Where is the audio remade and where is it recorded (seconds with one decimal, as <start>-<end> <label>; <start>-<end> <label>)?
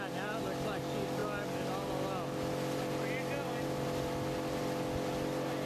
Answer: 0.0-5.7 recorded